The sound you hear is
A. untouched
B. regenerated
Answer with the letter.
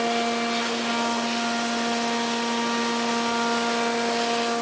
A